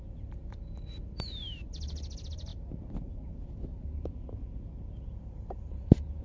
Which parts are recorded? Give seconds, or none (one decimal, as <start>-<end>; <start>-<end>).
0.0-6.2